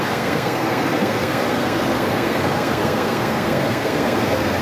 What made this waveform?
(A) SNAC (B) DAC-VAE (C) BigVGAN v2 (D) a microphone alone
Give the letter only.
A